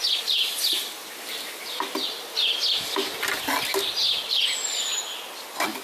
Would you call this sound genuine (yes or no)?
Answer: yes